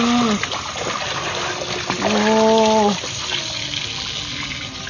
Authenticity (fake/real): real